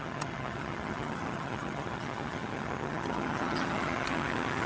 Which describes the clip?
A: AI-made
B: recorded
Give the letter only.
A